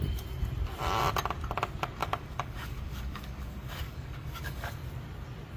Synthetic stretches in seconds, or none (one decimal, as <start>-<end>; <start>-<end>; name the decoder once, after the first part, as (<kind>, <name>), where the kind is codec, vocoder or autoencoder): 2.0-4.7 (codec, DAC)